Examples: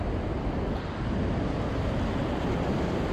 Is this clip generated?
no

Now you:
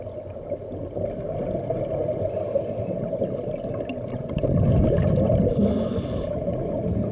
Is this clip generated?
no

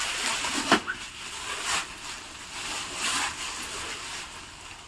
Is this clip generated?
no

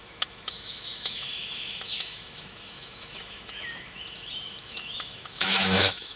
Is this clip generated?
yes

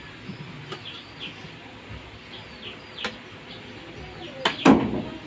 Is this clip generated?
no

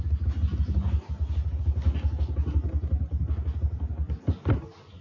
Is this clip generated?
no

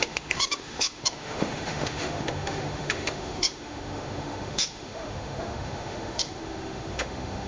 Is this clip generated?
yes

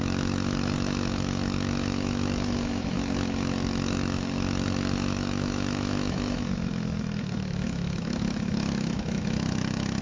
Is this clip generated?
yes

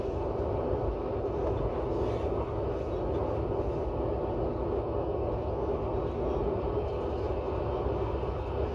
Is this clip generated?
no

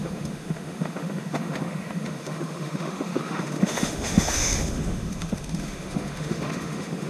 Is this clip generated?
yes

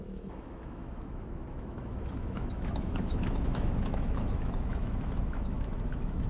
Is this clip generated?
yes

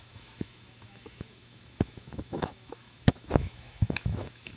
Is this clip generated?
yes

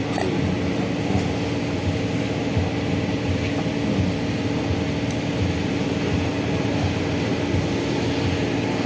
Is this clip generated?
no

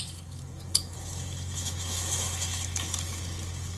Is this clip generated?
yes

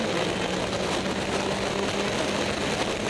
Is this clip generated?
no